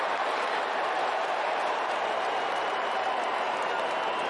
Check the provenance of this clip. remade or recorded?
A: remade